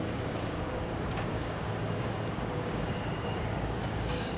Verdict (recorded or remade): remade